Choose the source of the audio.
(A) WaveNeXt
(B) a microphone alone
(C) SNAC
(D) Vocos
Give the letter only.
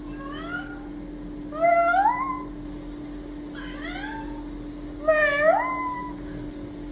B